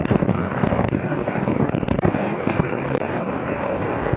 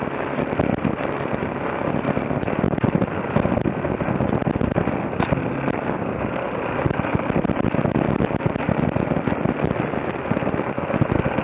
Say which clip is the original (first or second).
second